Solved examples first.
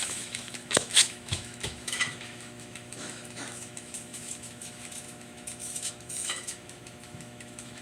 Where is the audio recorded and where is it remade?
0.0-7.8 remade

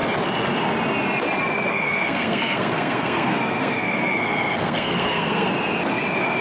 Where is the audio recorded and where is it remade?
0.0-1.7 recorded; 1.7-5.5 remade; 5.5-6.4 recorded

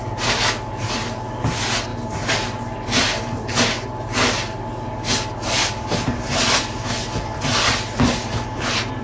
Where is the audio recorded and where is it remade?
0.0-9.0 recorded

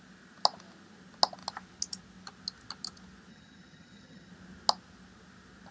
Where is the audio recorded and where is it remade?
0.0-3.3 recorded; 3.3-4.3 remade; 4.3-5.7 recorded

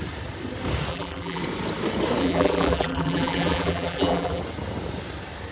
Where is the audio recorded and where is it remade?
0.0-0.9 recorded; 0.9-1.4 remade; 1.4-2.2 recorded; 2.2-4.4 remade; 4.4-5.5 recorded